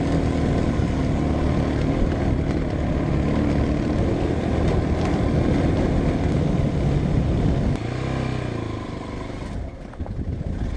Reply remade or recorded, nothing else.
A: recorded